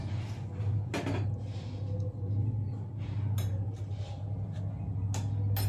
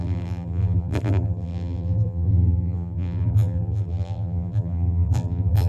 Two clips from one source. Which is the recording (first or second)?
first